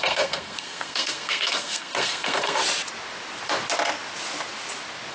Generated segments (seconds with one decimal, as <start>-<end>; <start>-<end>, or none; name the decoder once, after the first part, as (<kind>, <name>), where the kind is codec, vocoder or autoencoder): 0.0-2.6 (codec, SNAC)